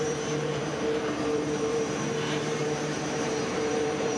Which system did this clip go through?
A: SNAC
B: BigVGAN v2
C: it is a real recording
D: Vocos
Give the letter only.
B